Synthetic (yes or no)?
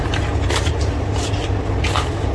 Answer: no